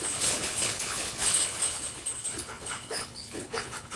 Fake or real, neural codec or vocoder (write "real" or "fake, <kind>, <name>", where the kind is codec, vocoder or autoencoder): fake, codec, HILCodec